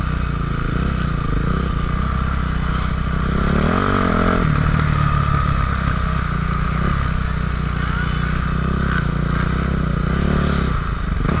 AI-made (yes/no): no